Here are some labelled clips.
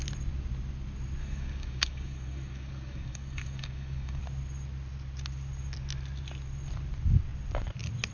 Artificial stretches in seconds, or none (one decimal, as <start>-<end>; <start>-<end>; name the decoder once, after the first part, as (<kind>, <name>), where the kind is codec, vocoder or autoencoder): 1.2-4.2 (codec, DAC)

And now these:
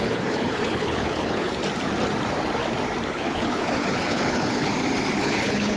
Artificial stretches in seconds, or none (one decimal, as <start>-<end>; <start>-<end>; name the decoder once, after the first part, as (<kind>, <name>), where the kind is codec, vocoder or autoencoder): 0.0-1.6 (codec, HILCodec); 3.1-4.7; 5.2-5.8

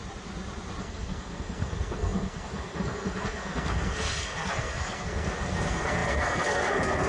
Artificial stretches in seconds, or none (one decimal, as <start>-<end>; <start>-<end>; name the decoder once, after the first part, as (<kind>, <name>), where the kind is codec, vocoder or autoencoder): 0.8-7.1 (codec, SNAC)

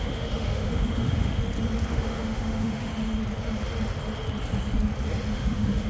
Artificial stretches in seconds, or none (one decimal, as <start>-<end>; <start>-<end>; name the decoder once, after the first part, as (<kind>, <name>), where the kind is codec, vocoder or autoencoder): 0.0-1.4 (autoencoder, DAC-VAE); 1.9-2.9; 5.3-5.9